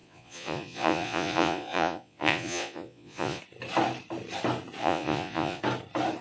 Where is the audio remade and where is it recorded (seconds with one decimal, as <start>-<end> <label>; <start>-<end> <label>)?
0.0-3.4 remade; 3.4-4.8 recorded; 4.8-5.6 remade; 5.6-6.2 recorded